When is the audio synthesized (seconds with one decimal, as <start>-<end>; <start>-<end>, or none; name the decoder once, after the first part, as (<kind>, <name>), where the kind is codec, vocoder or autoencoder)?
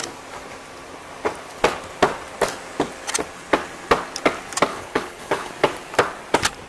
4.7-5.5 (codec, HILCodec)